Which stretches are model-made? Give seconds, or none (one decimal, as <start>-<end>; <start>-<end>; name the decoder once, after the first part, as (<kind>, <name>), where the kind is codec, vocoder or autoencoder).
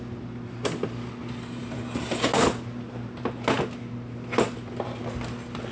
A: none